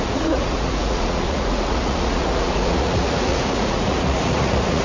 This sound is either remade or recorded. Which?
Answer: remade